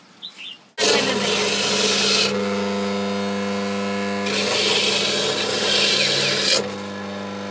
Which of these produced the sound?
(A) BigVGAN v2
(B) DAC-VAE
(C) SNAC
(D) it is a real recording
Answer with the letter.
D